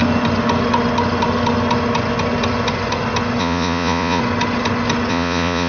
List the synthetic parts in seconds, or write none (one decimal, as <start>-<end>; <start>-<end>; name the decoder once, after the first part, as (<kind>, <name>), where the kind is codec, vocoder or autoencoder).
3.4-4.2 (vocoder, Vocos); 5.1-5.7